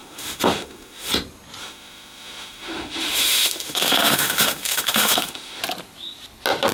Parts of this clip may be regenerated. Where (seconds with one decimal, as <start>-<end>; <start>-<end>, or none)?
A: 0.0-1.1; 1.6-5.6